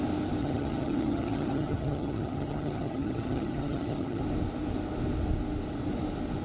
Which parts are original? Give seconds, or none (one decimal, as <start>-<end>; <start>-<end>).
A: 0.0-0.4; 4.2-6.4